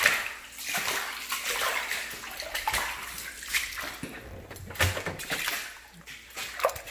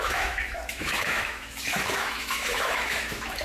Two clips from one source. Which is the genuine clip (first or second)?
first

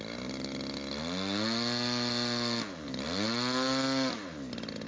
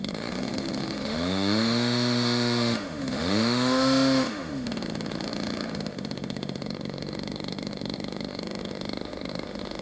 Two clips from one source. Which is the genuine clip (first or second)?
first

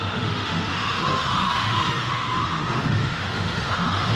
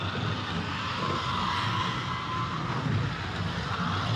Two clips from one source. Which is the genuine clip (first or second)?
second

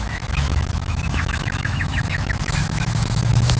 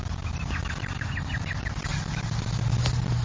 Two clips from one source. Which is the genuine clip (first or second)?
second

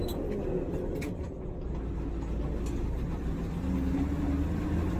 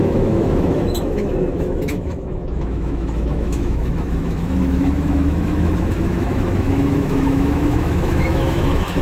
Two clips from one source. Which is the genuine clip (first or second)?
first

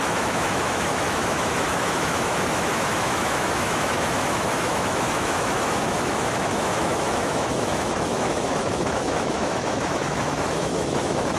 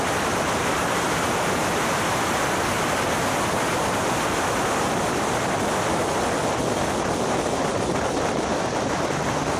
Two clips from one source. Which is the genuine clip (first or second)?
second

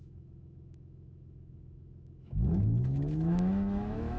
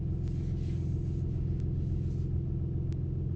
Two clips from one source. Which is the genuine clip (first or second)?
second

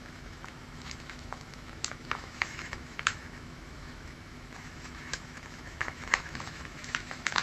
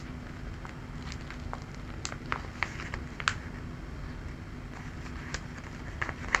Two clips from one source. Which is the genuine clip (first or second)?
second